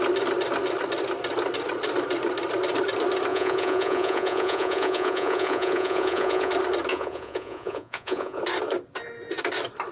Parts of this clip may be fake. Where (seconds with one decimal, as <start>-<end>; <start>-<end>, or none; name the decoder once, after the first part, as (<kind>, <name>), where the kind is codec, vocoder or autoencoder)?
3.3-6.5 (vocoder, Vocos); 6.9-8.4